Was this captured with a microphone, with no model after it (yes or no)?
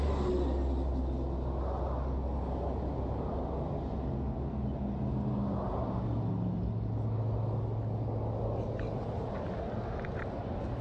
yes